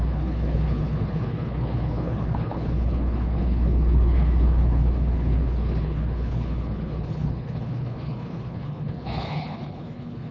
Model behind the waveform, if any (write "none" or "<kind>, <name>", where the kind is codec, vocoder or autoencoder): codec, HILCodec